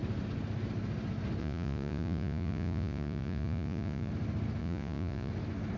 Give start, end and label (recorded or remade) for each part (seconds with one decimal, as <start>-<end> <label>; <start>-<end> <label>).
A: 0.0-1.4 recorded; 1.4-4.1 remade; 4.1-4.6 recorded; 4.6-5.3 remade; 5.3-5.8 recorded

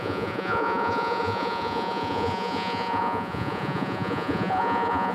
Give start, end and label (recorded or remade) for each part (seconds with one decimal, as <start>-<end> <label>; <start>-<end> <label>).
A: 0.0-5.1 remade

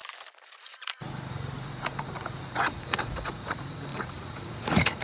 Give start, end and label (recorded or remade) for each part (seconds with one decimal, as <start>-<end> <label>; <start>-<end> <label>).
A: 0.0-0.7 recorded; 0.7-5.0 remade

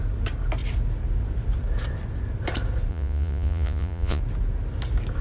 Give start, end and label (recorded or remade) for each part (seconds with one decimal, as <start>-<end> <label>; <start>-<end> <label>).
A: 0.0-2.9 recorded; 2.9-4.2 remade; 4.2-5.2 recorded